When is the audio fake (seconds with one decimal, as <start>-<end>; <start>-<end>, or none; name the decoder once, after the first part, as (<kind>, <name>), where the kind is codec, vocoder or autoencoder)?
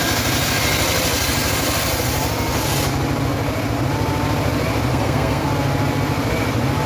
4.9-5.5 (codec, SNAC)